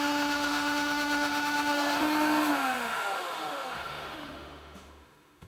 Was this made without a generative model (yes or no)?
no